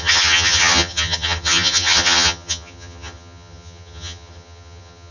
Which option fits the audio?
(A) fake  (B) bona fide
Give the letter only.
A